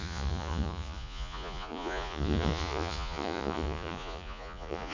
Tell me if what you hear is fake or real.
fake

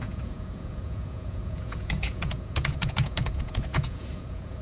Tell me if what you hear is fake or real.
fake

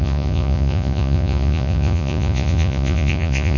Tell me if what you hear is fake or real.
fake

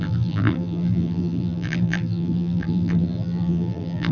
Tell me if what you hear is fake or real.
fake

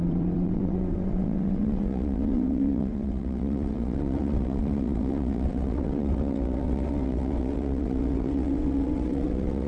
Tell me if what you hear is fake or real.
fake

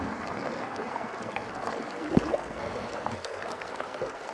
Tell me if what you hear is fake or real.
fake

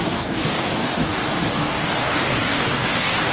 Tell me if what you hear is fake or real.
fake